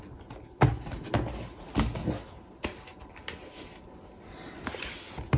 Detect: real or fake real